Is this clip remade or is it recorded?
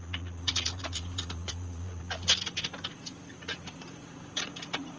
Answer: remade